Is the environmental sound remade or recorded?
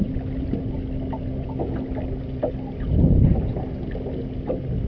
recorded